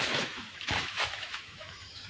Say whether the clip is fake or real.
fake